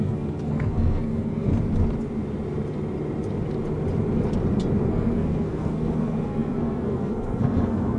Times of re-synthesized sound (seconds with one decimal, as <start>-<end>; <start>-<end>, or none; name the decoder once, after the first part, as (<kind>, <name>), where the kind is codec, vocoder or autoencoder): 0.0-1.5 (codec, SNAC); 4.9-8.0